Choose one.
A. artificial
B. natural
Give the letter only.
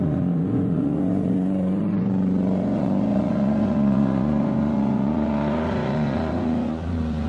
A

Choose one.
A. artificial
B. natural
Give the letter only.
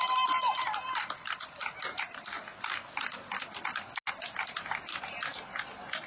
B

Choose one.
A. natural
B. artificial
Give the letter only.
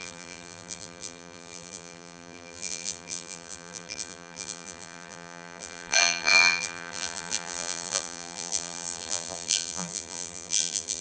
B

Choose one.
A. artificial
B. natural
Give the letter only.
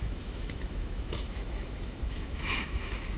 A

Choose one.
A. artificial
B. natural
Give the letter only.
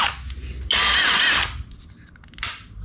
B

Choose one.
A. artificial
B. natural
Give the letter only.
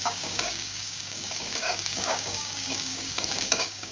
A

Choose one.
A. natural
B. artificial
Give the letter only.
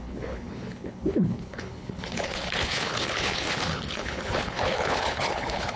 B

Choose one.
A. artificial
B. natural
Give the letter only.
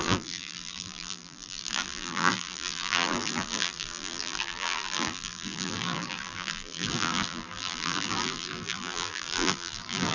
A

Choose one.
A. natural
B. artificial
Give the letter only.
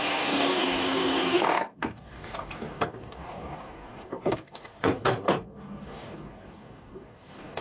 B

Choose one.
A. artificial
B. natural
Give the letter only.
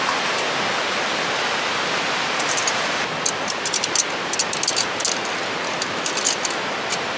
B